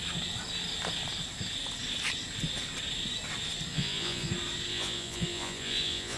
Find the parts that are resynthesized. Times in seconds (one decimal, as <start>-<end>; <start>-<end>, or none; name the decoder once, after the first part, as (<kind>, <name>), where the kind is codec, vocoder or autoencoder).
3.7-4.3 (vocoder, Vocos); 4.7-6.2